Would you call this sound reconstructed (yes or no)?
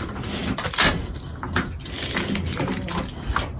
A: no